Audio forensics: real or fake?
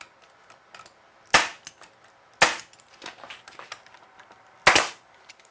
real